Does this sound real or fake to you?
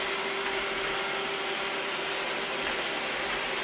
real